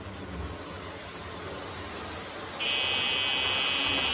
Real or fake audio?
real